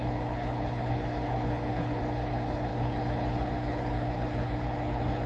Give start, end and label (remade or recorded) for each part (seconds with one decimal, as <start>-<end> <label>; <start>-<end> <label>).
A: 0.0-5.3 remade